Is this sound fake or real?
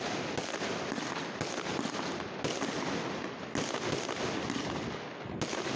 real